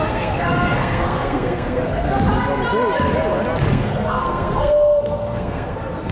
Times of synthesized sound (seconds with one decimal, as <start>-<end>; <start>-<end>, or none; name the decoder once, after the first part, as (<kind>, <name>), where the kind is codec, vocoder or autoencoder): 0.0-2.1 (codec, SNAC); 3.7-6.1